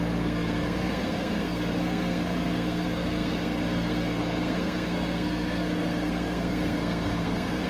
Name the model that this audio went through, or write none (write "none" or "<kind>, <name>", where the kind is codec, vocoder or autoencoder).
codec, SNAC